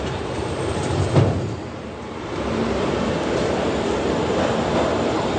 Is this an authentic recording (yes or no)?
no